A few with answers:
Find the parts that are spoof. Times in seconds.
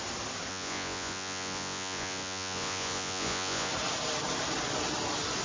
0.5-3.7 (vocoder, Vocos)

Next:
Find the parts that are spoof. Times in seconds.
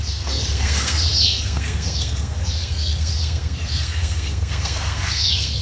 0.0-5.6 (codec, SNAC)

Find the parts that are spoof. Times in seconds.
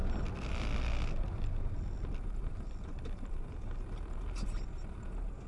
none